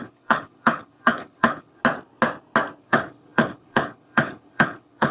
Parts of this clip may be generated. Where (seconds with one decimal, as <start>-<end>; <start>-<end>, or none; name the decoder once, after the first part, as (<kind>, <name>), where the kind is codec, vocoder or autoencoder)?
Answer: 0.0-1.8 (codec, HILCodec); 2.8-5.1